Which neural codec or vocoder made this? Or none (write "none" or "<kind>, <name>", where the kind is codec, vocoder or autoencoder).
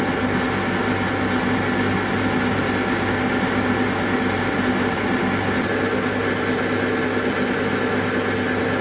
none